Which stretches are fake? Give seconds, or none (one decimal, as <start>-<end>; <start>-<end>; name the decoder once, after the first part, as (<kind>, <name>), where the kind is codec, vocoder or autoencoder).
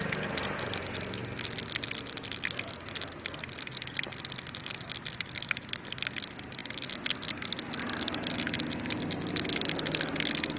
none